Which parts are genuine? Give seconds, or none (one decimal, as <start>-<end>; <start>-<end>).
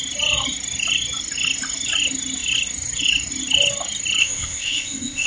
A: 0.0-4.2